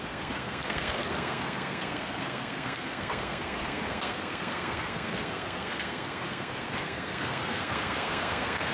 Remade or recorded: remade